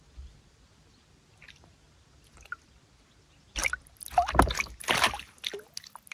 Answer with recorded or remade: recorded